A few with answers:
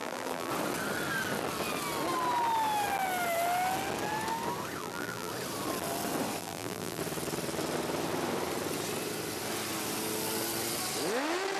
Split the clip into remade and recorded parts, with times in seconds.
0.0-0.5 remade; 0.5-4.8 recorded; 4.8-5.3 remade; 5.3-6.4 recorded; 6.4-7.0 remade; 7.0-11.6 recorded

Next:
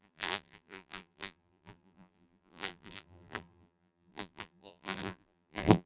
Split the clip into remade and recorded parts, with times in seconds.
0.0-5.9 remade

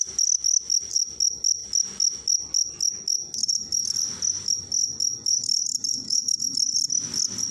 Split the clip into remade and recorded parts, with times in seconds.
0.0-7.5 recorded

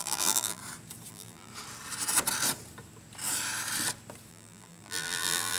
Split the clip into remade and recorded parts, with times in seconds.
0.0-0.6 remade; 0.6-1.1 recorded; 1.1-1.5 remade; 1.5-4.3 recorded; 4.3-5.6 remade

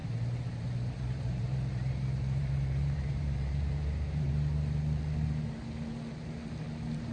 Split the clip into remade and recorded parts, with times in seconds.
0.0-4.3 remade; 4.3-7.1 recorded

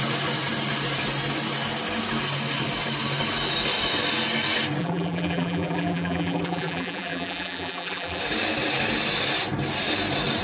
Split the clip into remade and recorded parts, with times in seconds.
0.0-4.8 recorded; 4.8-8.2 remade; 8.2-10.4 recorded

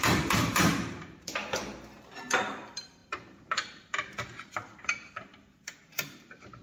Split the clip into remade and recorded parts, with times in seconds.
0.0-6.6 remade